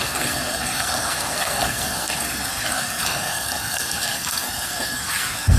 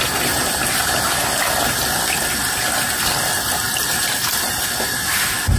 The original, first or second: second